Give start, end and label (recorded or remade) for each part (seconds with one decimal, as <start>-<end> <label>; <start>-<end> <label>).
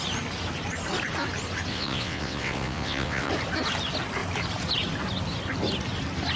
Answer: 0.0-1.7 recorded; 1.7-3.3 remade; 3.3-6.4 recorded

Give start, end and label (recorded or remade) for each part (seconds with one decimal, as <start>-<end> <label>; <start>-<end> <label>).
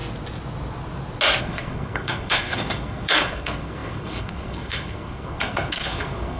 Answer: 0.0-1.4 recorded; 1.4-6.4 remade